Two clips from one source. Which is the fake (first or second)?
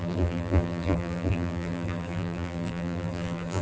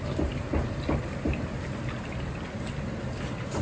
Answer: first